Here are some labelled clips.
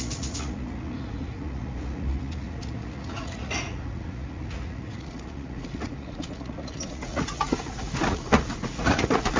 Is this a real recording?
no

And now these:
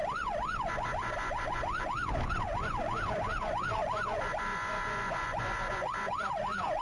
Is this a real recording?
no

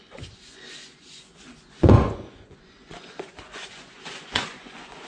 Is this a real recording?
no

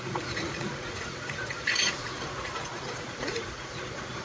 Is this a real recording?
no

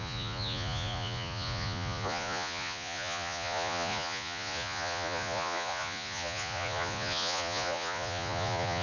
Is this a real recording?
no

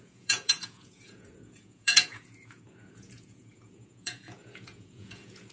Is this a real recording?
no